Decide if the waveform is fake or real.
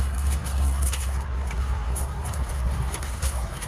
fake